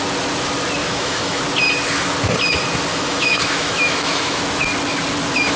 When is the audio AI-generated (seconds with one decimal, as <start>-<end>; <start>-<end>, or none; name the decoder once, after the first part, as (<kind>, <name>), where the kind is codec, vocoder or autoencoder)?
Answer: 0.8-1.4 (autoencoder, DAC-VAE); 2.9-4.4